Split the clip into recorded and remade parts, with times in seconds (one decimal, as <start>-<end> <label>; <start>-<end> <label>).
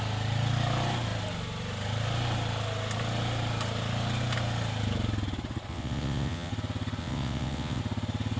0.0-5.7 recorded; 5.7-6.5 remade; 6.5-7.0 recorded; 7.0-7.8 remade; 7.8-8.4 recorded